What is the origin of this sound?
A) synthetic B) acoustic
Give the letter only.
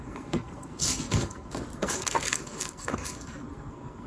A